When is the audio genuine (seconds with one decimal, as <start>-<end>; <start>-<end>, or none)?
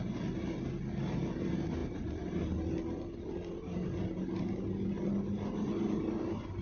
0.0-6.6